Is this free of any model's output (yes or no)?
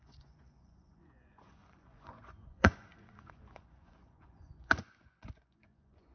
no